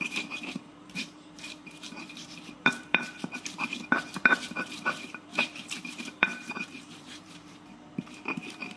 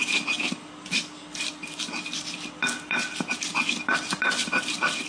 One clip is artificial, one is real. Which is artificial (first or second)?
first